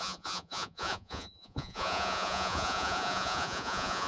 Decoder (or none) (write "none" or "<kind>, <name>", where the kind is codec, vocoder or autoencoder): vocoder, Vocos